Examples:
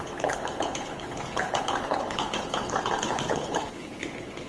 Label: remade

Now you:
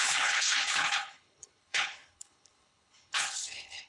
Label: remade